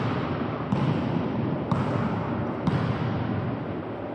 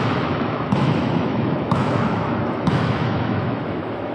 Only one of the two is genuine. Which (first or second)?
first